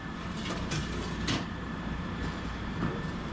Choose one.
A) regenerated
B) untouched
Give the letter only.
A